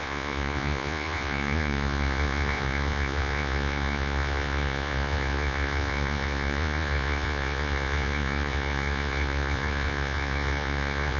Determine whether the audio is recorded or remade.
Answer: remade